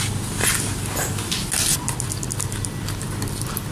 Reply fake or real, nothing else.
real